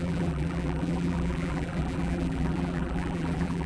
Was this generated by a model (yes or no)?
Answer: yes